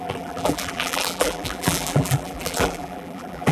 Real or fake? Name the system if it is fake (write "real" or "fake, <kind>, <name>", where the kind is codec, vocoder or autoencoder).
fake, vocoder, BigVGAN v2